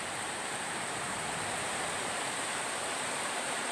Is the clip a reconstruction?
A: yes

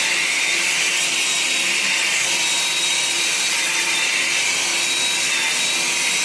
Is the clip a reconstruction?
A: no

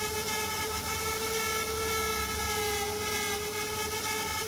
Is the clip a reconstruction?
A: no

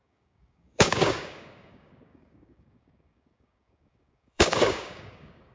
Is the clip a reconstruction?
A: yes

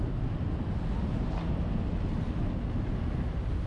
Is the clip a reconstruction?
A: no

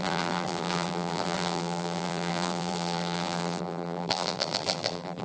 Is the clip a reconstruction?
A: yes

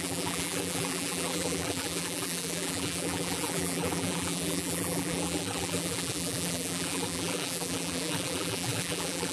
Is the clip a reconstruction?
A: yes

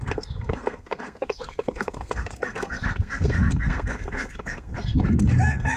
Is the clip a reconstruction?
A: yes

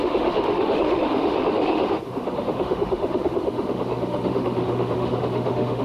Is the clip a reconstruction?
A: yes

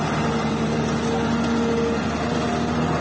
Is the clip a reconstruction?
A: no